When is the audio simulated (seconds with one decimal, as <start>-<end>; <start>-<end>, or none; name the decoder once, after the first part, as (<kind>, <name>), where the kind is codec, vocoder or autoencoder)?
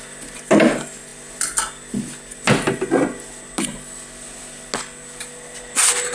none